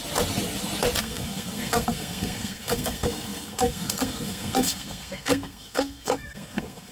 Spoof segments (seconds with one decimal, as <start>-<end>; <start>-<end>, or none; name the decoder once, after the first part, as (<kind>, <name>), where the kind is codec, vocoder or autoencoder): 1.0-6.9 (codec, SNAC)